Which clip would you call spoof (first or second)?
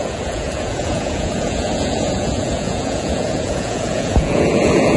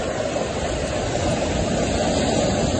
first